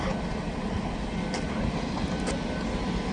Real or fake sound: real